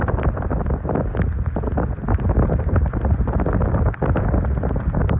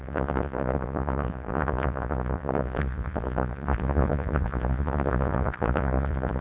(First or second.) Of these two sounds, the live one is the first